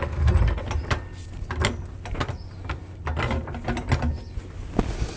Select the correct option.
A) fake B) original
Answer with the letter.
B